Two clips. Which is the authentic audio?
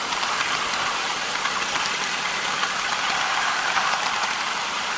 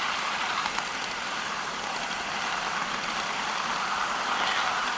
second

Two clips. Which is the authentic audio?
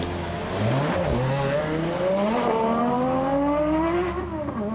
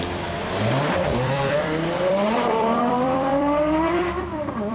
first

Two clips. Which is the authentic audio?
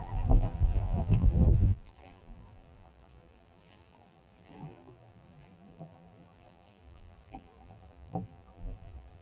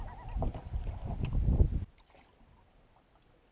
second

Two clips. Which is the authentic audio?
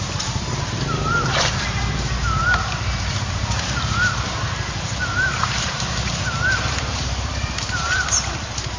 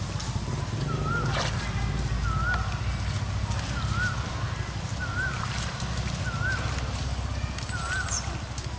second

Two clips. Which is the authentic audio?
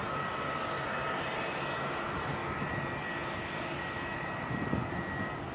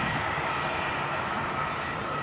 first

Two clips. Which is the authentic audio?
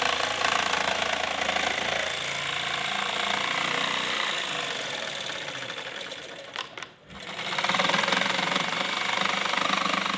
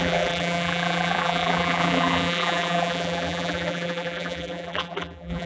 first